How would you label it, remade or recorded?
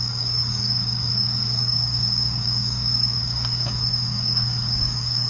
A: remade